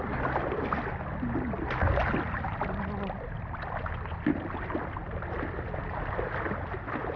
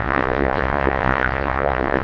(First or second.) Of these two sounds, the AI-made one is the second